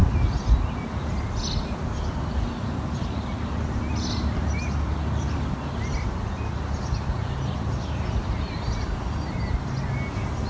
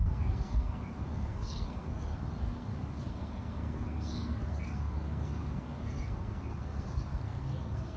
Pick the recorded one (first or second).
first